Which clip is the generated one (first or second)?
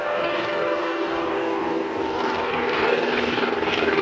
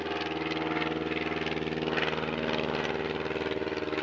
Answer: first